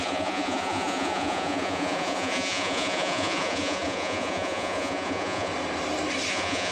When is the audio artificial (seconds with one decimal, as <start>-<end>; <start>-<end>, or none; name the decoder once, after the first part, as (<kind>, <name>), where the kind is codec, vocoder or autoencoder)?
0.0-5.5 (vocoder, Vocos); 6.3-6.7